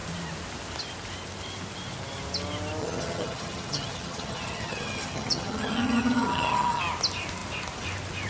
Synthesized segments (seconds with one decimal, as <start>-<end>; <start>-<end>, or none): 2.8-6.8